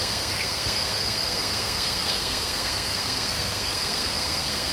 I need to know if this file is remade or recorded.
remade